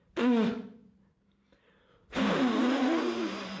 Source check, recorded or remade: recorded